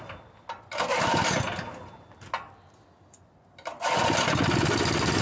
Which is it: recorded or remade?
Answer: recorded